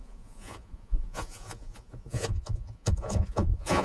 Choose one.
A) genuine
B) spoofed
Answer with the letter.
B